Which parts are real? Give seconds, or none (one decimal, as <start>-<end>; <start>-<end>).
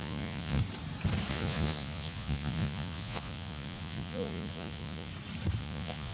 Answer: 0.6-1.3; 5.1-5.6